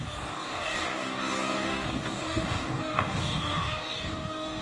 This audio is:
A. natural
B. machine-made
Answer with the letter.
B